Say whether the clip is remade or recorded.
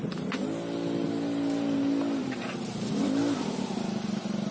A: recorded